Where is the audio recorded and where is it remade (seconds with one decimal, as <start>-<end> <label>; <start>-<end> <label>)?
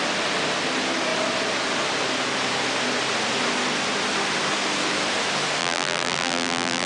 0.0-5.6 recorded; 5.6-6.9 remade